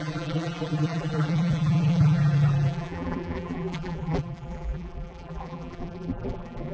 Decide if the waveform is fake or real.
fake